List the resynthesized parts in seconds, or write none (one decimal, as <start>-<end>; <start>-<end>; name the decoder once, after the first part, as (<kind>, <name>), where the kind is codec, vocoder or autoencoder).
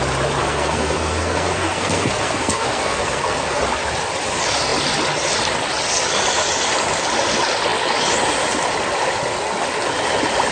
0.4-3.6 (codec, SNAC)